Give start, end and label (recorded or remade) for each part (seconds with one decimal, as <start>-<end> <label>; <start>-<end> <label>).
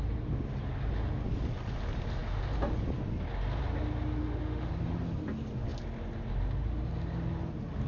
0.0-4.2 recorded; 4.2-4.7 remade; 4.7-7.9 recorded